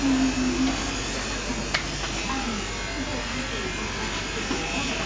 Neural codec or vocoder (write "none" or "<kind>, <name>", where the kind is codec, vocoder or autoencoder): none